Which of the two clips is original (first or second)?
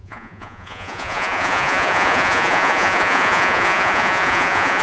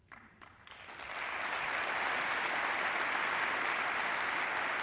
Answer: second